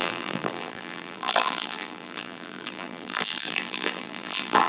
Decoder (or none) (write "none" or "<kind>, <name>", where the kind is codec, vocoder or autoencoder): vocoder, BigVGAN v2